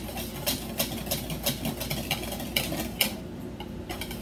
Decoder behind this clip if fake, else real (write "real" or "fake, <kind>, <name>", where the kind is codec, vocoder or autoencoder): real